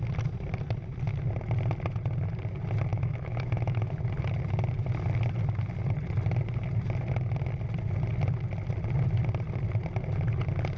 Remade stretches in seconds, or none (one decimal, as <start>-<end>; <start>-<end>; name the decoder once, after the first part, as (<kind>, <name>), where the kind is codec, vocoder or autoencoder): 2.9-3.9 (autoencoder, DAC-VAE)